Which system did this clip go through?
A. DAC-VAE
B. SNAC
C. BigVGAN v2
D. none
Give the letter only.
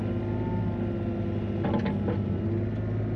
D